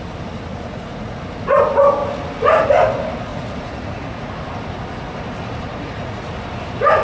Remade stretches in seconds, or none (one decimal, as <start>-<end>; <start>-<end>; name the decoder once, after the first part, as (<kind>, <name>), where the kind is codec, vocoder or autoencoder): 0.5-1.2 (vocoder, Vocos); 3.3-4.3; 5.7-6.2